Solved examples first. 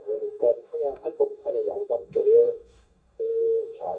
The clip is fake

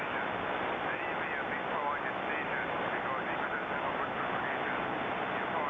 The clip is real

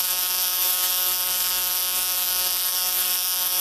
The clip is fake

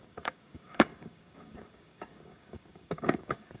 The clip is fake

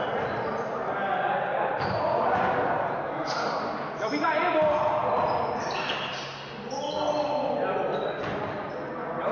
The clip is real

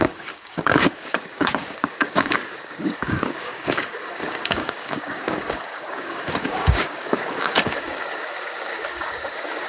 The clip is fake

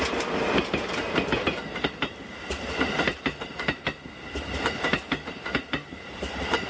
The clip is real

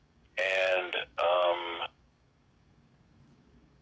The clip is fake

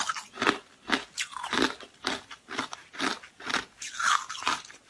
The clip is real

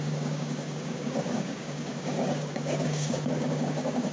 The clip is fake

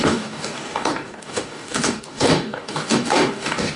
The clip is fake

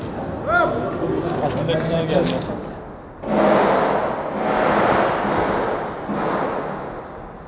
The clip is real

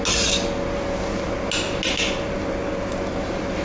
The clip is real